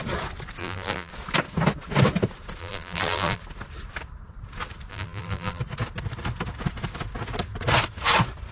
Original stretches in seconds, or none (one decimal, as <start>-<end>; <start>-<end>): 0.0-0.6; 1.1-2.6; 3.4-4.9; 5.6-8.5